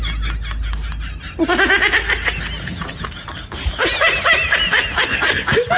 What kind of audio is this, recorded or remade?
recorded